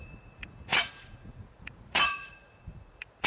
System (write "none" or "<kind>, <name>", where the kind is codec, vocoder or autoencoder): vocoder, Vocos